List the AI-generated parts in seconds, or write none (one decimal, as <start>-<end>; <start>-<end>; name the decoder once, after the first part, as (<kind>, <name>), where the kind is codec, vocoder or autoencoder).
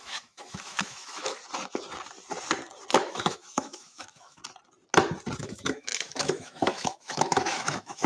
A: 0.0-1.4 (autoencoder, DAC-VAE); 2.9-4.4; 5.4-8.1